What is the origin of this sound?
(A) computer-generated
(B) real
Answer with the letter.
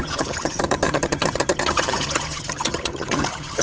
A